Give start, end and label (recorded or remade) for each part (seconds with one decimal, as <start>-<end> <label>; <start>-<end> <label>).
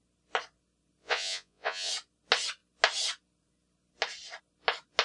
0.0-1.0 recorded; 1.0-1.9 remade; 1.9-5.0 recorded